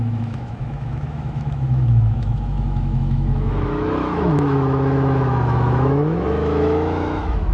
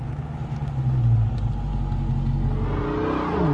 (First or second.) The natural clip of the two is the second